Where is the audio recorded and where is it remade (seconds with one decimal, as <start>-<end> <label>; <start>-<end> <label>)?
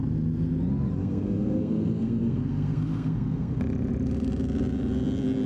0.0-1.0 recorded; 1.0-3.6 remade; 3.6-5.5 recorded